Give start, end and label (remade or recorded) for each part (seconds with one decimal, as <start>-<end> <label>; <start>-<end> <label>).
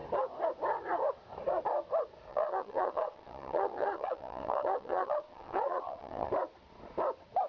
0.0-2.3 recorded; 2.3-6.3 remade; 6.3-7.5 recorded